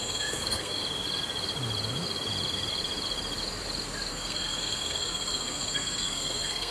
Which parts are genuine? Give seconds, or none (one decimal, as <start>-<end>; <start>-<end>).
0.8-4.1